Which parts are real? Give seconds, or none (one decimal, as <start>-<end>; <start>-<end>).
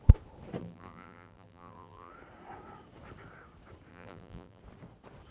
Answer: 0.0-0.6; 2.1-3.9; 4.6-5.3